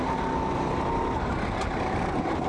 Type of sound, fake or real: real